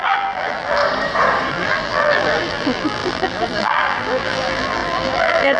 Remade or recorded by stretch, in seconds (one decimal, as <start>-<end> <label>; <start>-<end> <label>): 0.0-0.8 remade; 0.8-1.5 recorded; 1.5-5.6 remade